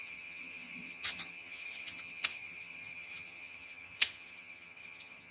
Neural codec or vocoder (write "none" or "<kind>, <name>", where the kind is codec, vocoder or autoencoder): vocoder, HiFi-GAN